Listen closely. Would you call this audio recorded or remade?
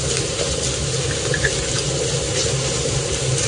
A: recorded